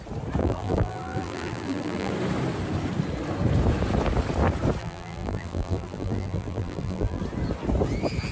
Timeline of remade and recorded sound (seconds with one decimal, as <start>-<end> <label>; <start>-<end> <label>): 0.0-0.4 recorded; 0.4-2.1 remade; 2.1-4.8 recorded; 4.8-7.2 remade; 7.2-8.3 recorded

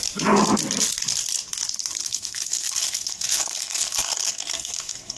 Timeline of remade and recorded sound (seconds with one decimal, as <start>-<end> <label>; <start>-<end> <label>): 0.0-2.0 recorded; 2.0-5.2 remade

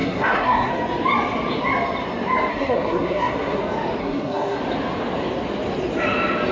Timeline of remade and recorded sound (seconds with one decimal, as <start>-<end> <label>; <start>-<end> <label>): 0.0-0.7 remade; 0.7-2.5 recorded; 2.5-3.6 remade; 3.6-4.0 recorded; 4.0-4.6 remade; 4.6-6.5 recorded

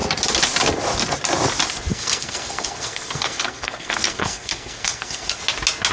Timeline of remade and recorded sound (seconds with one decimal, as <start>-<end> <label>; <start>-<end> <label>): 0.0-1.9 recorded; 1.9-5.4 remade; 5.4-5.9 recorded

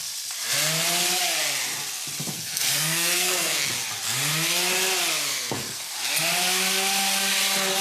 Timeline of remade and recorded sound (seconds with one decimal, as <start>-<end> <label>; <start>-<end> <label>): 0.0-2.3 recorded; 2.3-3.7 remade; 3.7-5.3 recorded; 5.3-5.9 remade; 5.9-7.8 recorded

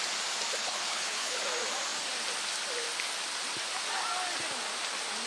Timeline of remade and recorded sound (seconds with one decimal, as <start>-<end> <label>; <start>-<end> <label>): 0.0-0.6 recorded; 0.6-1.4 remade; 1.4-5.3 recorded

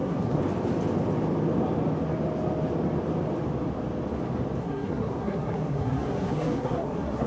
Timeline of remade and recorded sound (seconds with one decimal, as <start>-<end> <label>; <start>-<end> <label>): 0.0-0.4 remade; 0.4-4.6 recorded; 4.6-7.3 remade

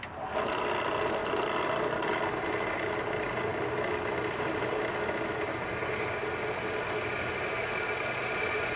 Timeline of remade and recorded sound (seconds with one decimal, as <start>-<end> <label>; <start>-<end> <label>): 0.0-8.8 recorded